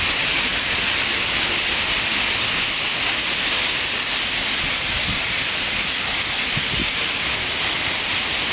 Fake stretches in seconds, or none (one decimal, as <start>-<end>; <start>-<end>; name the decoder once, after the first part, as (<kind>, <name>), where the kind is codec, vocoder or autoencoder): none

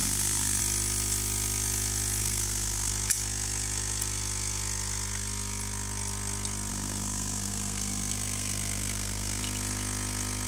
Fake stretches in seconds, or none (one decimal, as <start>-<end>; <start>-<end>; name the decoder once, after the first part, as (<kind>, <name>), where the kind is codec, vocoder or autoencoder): 0.0-0.6 (codec, SNAC); 2.2-2.9; 6.7-9.4

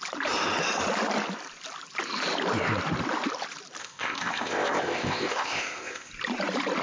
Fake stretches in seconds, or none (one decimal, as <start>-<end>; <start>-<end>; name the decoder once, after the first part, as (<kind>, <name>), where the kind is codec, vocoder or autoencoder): 3.8-6.1 (codec, ZipCodec)